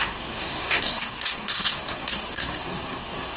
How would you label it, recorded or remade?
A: remade